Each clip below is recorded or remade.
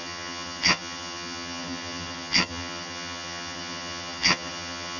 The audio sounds remade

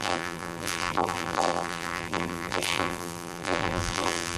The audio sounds remade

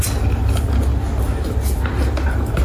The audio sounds recorded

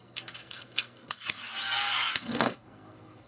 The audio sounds remade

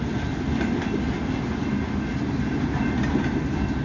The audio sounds recorded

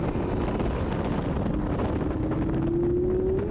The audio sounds recorded